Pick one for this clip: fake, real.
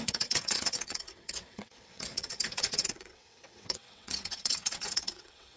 fake